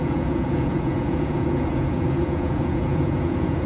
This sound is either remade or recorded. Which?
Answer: remade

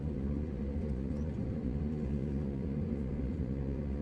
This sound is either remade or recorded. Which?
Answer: remade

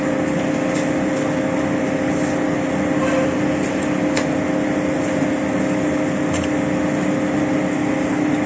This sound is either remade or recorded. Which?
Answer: recorded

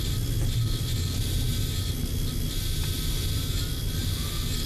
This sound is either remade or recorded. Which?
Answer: recorded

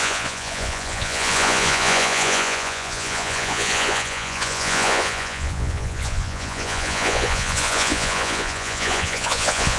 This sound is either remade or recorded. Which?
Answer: remade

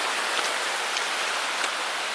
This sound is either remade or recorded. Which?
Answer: recorded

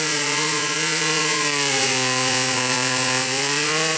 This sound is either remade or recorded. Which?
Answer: remade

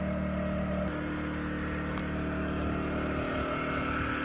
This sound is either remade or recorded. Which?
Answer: recorded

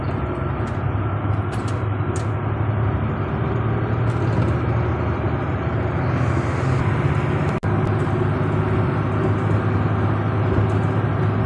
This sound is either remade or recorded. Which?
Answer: recorded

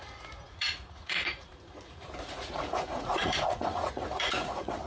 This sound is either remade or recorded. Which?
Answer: remade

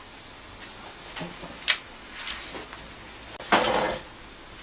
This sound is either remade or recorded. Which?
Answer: recorded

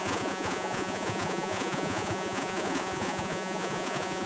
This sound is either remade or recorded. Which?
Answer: remade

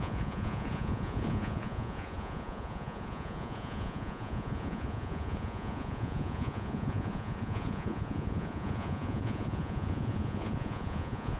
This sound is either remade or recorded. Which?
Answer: remade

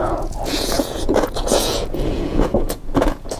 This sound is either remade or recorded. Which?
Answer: remade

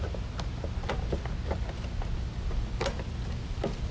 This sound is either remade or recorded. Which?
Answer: recorded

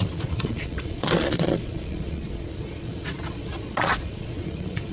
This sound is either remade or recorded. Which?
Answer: remade